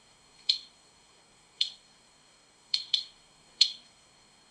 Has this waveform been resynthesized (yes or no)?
yes